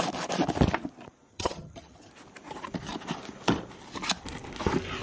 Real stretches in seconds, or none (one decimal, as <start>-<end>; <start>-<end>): 0.0-1.3; 2.1-5.0